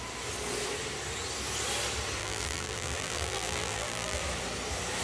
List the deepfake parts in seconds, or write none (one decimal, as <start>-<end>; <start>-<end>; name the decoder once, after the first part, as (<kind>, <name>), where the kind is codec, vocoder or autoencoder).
2.2-4.2 (vocoder, BigVGAN v2)